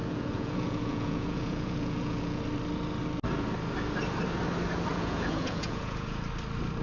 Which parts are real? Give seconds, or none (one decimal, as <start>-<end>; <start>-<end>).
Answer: 2.4-4.9; 6.2-6.8